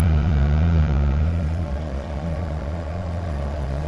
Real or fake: fake